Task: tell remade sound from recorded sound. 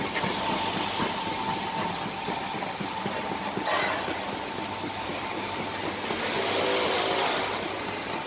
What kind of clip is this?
recorded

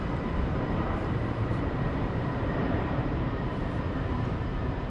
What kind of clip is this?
remade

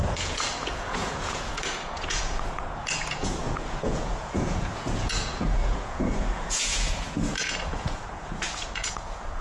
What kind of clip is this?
remade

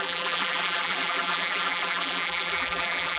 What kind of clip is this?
remade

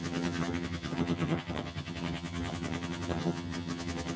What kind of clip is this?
remade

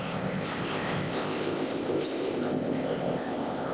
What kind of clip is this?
remade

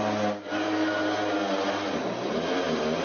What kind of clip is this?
recorded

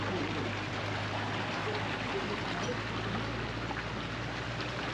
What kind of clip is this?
recorded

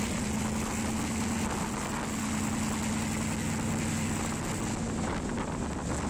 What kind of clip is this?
recorded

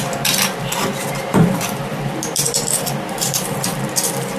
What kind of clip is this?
remade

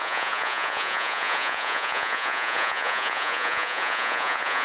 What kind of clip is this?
remade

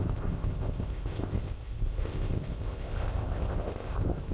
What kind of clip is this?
remade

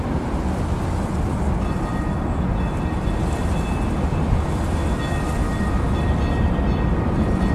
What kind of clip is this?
recorded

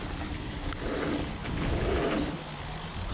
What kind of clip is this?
recorded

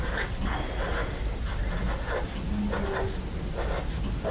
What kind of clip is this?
recorded